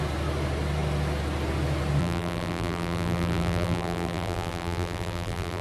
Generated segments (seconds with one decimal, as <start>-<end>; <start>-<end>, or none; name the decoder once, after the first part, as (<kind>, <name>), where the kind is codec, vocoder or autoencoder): 2.0-5.6 (vocoder, BigVGAN v2)